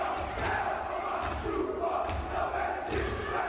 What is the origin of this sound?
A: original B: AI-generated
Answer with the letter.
A